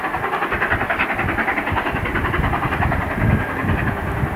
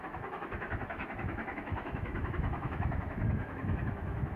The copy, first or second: second